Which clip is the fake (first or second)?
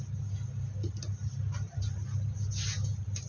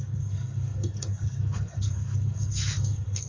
second